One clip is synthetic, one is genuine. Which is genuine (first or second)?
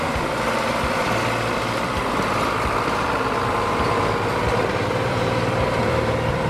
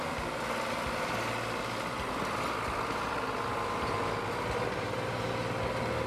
second